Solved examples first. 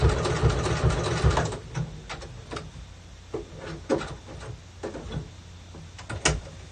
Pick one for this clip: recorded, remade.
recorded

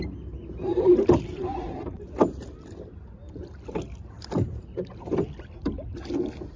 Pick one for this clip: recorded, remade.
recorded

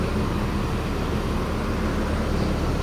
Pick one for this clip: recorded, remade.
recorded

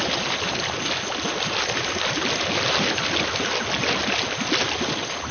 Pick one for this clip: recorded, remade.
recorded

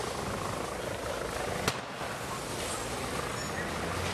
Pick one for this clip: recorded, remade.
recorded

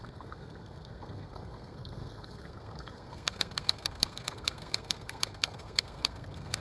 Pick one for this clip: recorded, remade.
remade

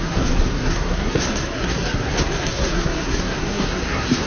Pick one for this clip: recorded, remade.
remade